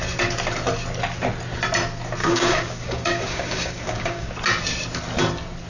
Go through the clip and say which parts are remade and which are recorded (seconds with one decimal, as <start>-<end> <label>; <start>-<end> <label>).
0.0-2.2 recorded; 2.2-4.3 remade; 4.3-5.7 recorded